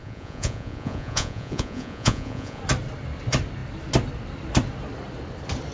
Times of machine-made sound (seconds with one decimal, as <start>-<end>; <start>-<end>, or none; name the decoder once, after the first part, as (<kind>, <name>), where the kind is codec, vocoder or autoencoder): 0.0-2.6 (vocoder, Vocos)